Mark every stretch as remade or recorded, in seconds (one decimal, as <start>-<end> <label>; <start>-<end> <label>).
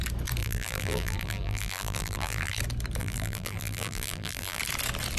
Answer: 0.0-0.4 recorded; 0.4-2.6 remade; 2.6-3.0 recorded; 3.0-4.6 remade; 4.6-5.2 recorded